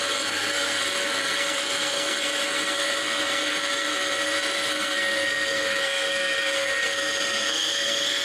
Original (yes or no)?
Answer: no